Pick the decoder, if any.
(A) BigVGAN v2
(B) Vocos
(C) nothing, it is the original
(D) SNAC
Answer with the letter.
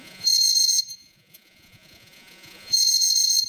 B